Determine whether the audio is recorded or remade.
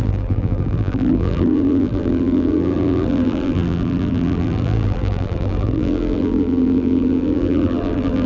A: remade